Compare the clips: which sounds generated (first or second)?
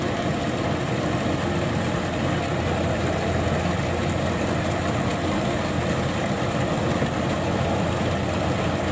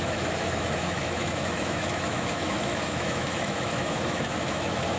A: second